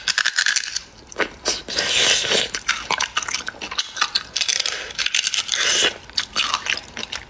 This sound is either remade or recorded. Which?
recorded